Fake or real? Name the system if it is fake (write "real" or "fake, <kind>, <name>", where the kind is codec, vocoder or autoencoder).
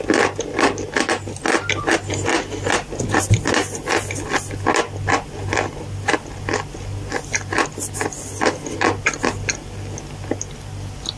real